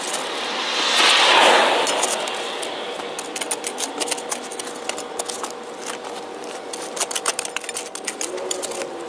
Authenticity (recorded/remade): recorded